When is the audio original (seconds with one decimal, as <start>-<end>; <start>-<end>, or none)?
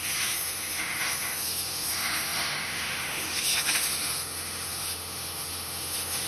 none